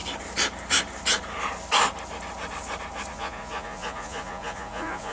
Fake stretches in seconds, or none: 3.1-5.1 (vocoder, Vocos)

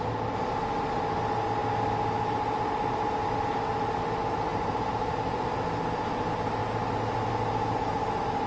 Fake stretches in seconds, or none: 4.5-5.1 (vocoder, BigVGAN v2)